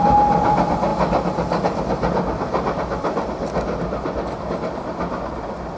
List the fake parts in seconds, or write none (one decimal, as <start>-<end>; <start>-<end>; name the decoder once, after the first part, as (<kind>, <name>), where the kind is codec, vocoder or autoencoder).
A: none